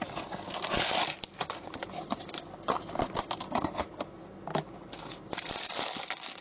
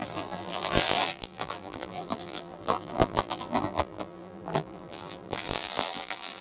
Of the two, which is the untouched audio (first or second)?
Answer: first